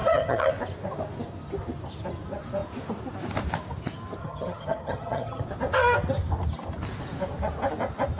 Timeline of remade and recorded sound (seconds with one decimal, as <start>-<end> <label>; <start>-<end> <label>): 0.0-0.5 remade; 0.5-4.2 recorded; 4.2-5.4 remade; 5.4-8.2 recorded